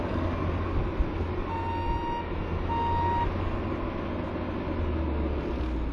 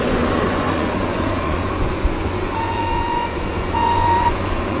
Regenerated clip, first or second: second